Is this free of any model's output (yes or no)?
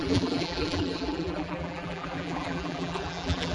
no